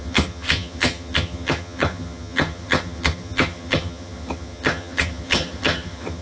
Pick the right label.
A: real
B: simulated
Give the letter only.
B